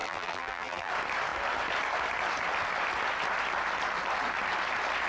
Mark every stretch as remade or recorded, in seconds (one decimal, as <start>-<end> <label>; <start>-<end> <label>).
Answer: 0.0-0.9 remade; 0.9-5.1 recorded